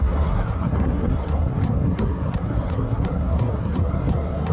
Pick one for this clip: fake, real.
fake